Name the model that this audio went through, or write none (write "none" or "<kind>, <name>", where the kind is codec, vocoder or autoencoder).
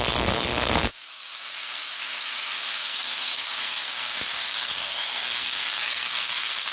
codec, SNAC